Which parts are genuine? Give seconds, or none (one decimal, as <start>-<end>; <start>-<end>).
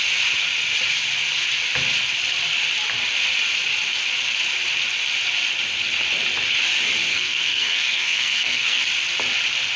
0.0-7.1; 8.8-9.8